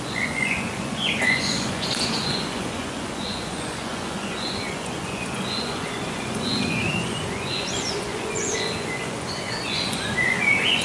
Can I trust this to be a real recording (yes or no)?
no